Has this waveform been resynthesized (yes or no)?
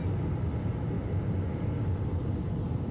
no